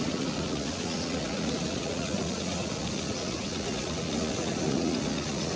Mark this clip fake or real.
fake